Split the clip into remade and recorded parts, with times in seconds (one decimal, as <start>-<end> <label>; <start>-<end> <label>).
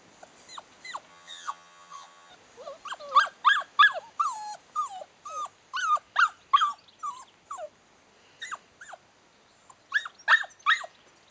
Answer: 0.0-1.1 recorded; 1.1-2.3 remade; 2.3-11.3 recorded